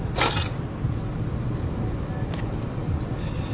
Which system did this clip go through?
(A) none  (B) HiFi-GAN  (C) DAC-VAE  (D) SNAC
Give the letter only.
A